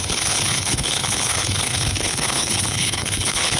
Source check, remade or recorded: remade